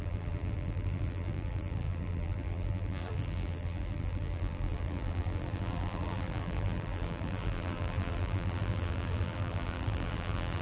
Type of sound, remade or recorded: remade